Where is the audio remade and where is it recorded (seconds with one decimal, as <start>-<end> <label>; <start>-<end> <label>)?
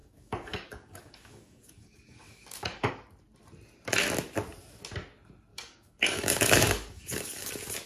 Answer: 0.0-2.9 remade; 2.9-5.5 recorded; 5.5-7.5 remade; 7.5-7.9 recorded